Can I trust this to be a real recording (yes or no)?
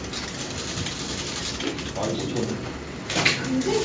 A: yes